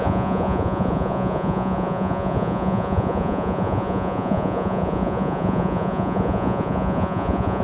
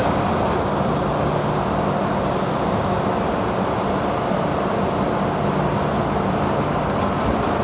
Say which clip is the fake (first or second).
first